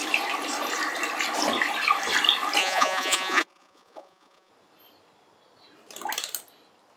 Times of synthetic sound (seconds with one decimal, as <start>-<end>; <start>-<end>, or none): 2.6-4.5